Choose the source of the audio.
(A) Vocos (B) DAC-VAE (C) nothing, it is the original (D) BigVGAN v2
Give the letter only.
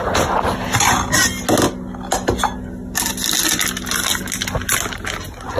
C